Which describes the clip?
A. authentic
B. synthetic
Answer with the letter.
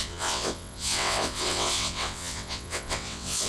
B